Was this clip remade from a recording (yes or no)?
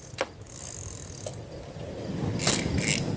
no